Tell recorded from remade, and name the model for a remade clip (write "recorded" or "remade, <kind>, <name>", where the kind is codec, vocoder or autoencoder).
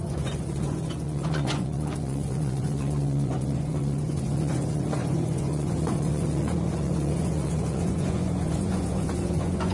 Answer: remade, vocoder, Vocos